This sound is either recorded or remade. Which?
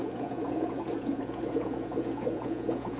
remade